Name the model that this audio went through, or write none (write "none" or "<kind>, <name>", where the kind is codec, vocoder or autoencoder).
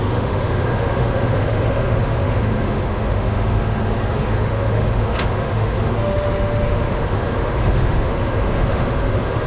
autoencoder, DAC-VAE